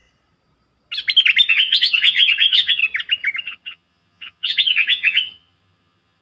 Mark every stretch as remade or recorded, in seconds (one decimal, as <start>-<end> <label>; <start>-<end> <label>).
0.0-1.5 recorded; 1.5-2.8 remade; 2.8-3.4 recorded; 3.4-6.2 remade